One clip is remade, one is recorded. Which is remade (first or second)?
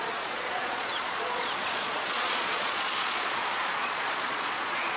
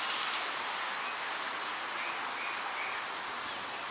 first